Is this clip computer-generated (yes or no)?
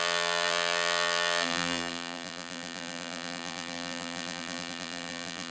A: yes